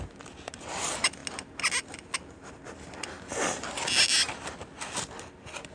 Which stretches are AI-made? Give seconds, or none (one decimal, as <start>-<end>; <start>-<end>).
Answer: none